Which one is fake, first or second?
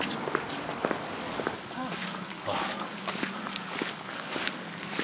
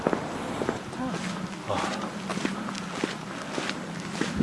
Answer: first